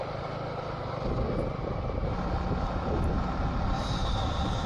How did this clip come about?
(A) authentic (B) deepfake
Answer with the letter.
A